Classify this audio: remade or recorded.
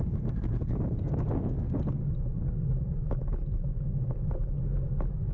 recorded